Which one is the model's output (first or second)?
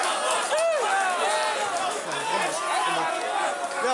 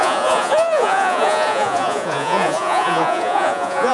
second